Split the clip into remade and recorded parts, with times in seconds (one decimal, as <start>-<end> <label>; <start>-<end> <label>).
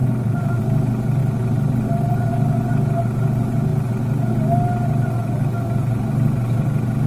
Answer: 0.0-0.6 remade; 0.6-1.2 recorded; 1.2-2.3 remade; 2.3-7.1 recorded